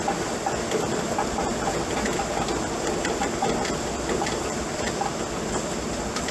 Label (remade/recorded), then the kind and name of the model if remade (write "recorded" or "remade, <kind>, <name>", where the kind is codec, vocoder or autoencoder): remade, vocoder, BigVGAN v2